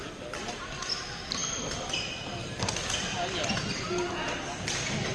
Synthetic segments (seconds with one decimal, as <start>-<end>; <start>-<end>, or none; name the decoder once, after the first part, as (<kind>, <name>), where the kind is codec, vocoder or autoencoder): none